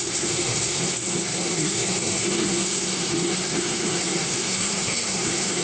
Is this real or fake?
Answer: fake